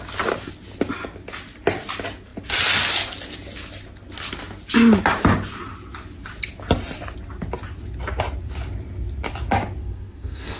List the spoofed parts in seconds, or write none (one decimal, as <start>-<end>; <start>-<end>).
9.8-10.6